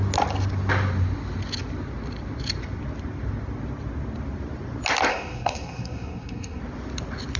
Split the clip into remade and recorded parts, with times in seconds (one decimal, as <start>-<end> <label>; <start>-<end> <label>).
0.0-5.1 recorded; 5.1-6.6 remade; 6.6-7.4 recorded